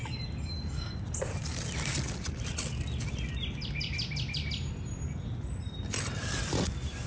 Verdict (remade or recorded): recorded